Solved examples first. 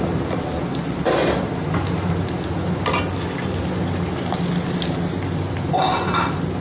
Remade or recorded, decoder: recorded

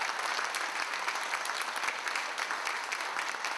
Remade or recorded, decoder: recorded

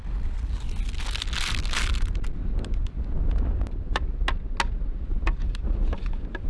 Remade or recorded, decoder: recorded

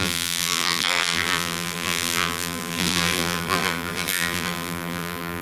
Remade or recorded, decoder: remade, vocoder, BigVGAN v2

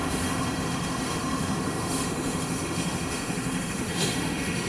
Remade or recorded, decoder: remade, autoencoder, DAC-VAE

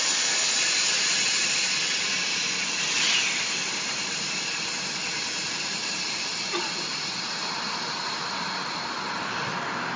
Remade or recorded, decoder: recorded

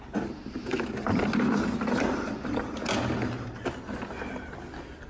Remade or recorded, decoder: recorded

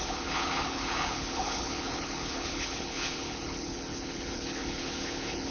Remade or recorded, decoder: remade, codec, HILCodec